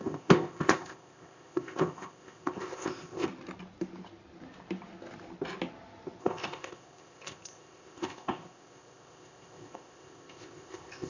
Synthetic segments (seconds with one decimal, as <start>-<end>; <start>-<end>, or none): 0.0-3.3; 6.2-11.1